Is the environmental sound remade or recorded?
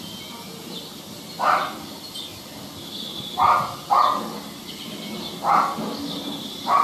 recorded